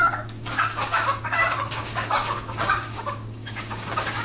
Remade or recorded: remade